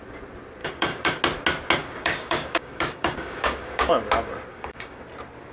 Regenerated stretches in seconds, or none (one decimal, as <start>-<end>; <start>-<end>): 0.6-1.2; 1.8-3.9; 4.5-5.0